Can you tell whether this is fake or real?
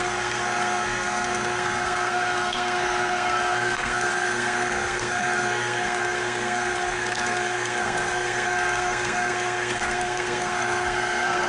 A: fake